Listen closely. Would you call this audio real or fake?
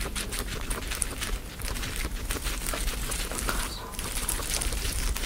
fake